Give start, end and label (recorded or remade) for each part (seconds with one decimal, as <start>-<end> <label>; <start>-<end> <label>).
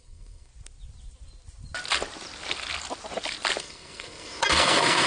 0.0-0.5 remade; 0.5-3.6 recorded; 3.6-5.1 remade